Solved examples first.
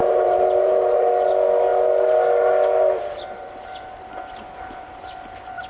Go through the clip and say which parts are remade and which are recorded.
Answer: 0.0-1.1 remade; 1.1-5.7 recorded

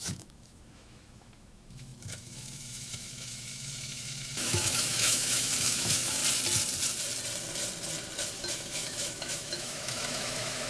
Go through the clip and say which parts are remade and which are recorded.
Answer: 0.0-6.2 remade; 6.2-8.5 recorded; 8.5-10.7 remade

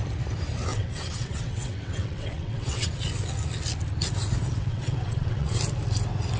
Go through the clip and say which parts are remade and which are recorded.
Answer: 0.0-0.7 recorded; 0.7-2.9 remade; 2.9-4.7 recorded; 4.7-5.6 remade; 5.6-6.4 recorded

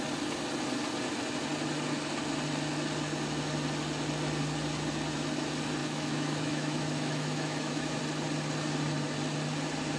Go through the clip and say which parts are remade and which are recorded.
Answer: 0.0-5.8 recorded; 5.8-8.0 remade; 8.0-10.0 recorded